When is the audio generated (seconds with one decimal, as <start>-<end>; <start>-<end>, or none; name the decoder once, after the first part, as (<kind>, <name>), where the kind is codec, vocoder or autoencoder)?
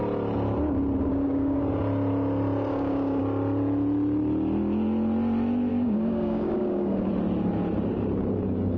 1.1-1.6 (codec, DAC); 2.7-3.2; 5.7-7.1